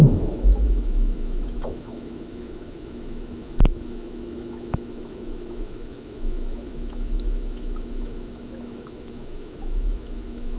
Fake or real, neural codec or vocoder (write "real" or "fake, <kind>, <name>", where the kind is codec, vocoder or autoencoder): fake, autoencoder, DAC-VAE